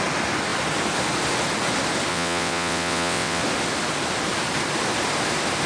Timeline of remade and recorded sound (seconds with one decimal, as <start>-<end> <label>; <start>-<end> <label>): 0.0-2.1 recorded; 2.1-3.4 remade; 3.4-5.7 recorded